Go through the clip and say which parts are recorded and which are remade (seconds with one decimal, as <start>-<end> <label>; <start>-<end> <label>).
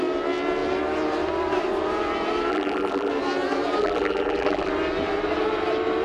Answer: 0.0-2.5 recorded; 2.5-3.1 remade; 3.1-3.8 recorded; 3.8-4.7 remade; 4.7-6.0 recorded